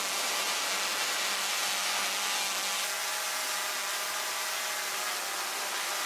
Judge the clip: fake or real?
real